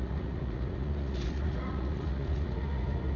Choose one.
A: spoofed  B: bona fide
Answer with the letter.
A